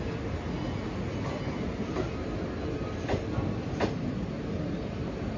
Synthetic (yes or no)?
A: no